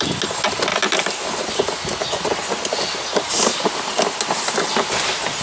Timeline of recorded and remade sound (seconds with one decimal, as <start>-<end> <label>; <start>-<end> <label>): 0.0-5.4 recorded